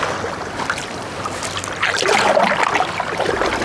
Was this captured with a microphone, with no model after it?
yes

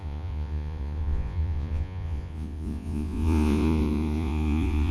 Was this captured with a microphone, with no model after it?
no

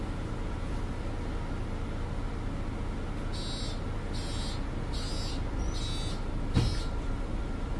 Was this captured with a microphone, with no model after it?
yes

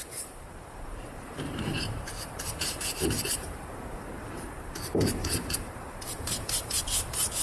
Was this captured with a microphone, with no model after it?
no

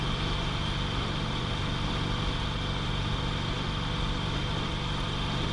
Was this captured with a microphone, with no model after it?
yes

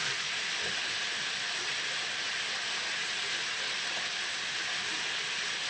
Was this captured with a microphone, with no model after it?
yes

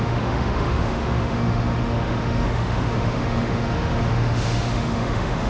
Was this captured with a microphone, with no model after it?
no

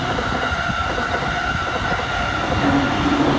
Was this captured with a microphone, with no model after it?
yes